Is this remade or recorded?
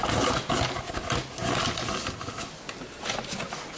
recorded